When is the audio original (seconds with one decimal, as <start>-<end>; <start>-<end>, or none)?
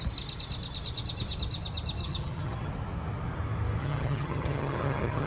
0.0-2.0; 2.7-3.8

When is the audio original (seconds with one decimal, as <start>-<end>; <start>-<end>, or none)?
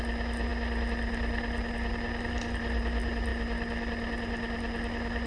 0.0-5.3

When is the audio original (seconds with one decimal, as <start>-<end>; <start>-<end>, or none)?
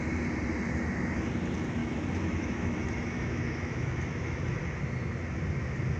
0.0-1.8; 4.6-6.0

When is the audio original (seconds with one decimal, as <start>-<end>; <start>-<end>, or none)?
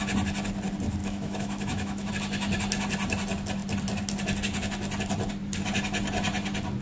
0.0-1.0; 2.1-6.8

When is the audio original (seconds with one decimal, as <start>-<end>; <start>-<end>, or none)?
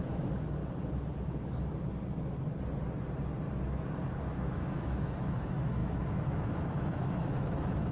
0.6-4.2